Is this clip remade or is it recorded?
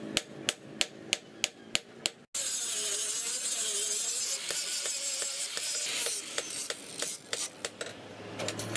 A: recorded